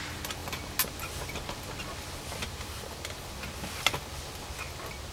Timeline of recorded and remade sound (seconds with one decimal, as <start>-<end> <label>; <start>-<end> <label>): 0.0-5.1 recorded